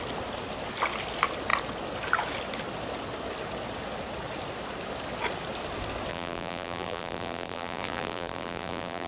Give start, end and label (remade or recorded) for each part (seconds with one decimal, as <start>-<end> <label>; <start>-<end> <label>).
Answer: 0.0-6.1 recorded; 6.1-9.1 remade